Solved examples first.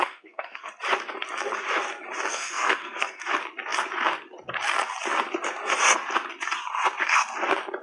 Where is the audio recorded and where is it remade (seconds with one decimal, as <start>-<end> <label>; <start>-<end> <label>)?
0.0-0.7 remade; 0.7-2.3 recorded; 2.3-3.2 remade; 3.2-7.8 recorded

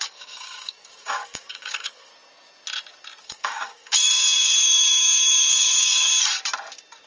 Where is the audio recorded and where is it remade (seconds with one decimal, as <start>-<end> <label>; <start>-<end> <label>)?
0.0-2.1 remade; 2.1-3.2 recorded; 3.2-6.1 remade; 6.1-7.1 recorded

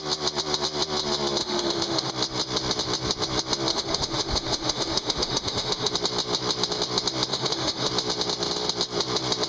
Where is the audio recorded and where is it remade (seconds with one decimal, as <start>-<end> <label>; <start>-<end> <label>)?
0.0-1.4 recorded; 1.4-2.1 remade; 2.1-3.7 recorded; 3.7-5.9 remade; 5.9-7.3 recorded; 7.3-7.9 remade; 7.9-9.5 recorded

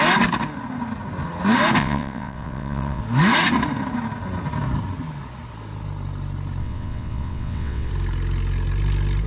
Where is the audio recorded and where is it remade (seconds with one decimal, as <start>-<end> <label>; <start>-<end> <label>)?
0.0-1.8 recorded; 1.8-3.0 remade; 3.0-6.6 recorded; 6.6-7.9 remade; 7.9-9.3 recorded

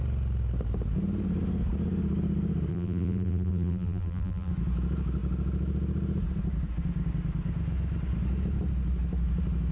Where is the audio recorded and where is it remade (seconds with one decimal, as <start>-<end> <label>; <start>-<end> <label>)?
0.0-2.7 recorded; 2.7-4.5 remade; 4.5-9.7 recorded